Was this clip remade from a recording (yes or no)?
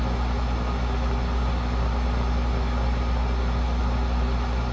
no